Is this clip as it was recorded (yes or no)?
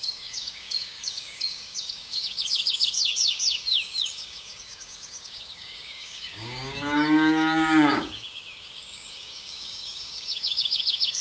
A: no